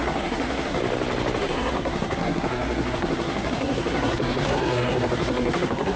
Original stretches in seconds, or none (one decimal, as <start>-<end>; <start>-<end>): 0.8-1.4